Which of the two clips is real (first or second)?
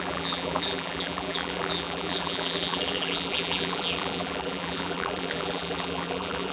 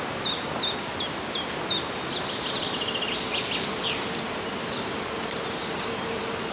second